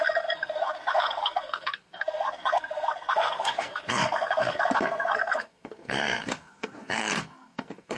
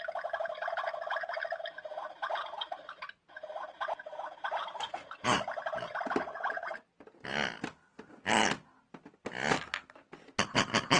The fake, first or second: first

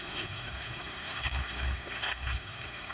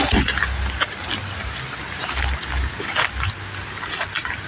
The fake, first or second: first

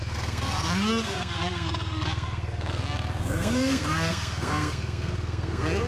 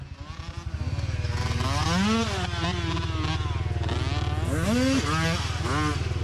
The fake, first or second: first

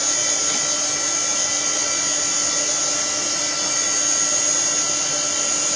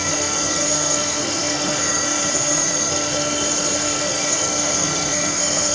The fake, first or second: second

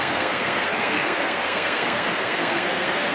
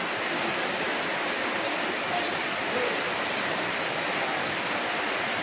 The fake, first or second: first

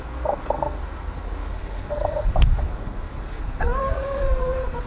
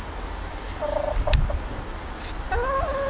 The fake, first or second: first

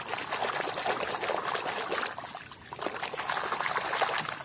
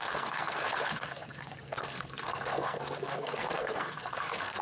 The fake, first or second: second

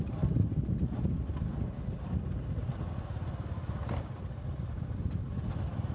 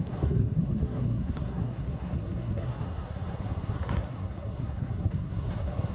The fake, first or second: second